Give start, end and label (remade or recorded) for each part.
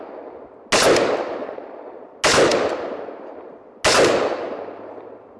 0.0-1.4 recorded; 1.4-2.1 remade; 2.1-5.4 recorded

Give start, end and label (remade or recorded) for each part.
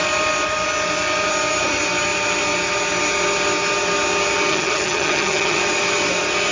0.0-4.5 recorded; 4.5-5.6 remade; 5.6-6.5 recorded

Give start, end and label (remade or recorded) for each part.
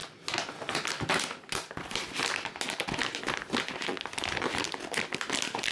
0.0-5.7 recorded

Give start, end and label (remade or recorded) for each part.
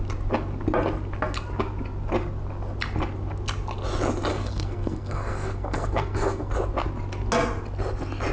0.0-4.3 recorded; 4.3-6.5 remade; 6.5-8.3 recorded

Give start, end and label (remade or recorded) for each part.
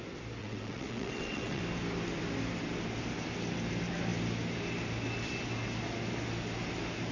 0.0-0.4 recorded; 0.4-1.6 remade; 1.6-7.1 recorded